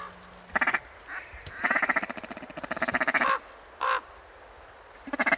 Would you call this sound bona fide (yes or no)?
yes